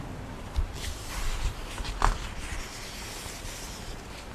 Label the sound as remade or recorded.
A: recorded